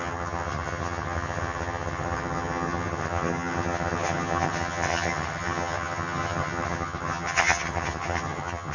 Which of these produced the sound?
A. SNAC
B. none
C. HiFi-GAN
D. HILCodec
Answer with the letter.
C